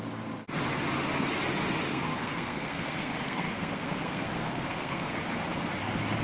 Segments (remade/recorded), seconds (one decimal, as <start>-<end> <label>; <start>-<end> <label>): 0.0-1.9 recorded; 1.9-5.2 remade; 5.2-6.2 recorded